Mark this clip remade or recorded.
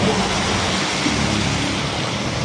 recorded